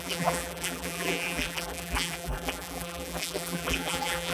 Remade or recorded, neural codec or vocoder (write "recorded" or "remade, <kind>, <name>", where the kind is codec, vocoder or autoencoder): remade, vocoder, BigVGAN v2